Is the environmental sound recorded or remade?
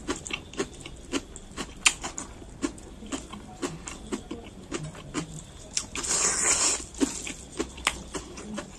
recorded